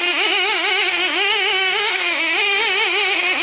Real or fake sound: fake